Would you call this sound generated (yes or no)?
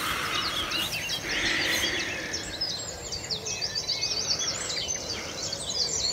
no